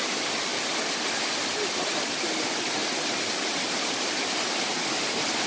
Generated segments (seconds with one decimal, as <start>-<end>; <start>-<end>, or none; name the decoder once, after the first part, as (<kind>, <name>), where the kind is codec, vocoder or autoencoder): none

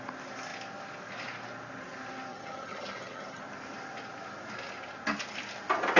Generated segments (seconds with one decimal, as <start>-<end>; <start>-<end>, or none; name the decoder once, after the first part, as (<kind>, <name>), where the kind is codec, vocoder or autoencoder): 2.3-3.4 (vocoder, HiFi-GAN)